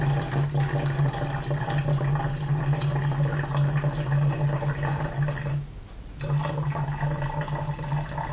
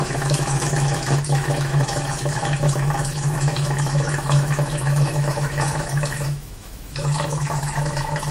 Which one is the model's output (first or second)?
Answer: second